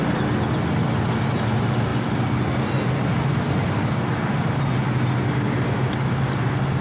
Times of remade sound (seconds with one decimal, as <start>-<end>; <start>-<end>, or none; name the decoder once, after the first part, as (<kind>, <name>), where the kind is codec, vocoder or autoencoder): none